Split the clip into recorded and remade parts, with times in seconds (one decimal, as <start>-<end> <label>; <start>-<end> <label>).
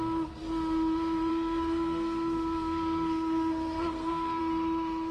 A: 0.0-1.3 recorded; 1.3-4.4 remade; 4.4-5.1 recorded